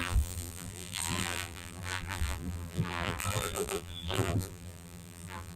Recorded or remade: remade